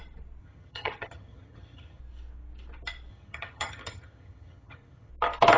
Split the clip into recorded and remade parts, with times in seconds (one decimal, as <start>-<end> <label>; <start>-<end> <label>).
0.0-0.4 recorded; 0.4-2.0 remade; 2.0-3.1 recorded; 3.1-5.1 remade; 5.1-5.6 recorded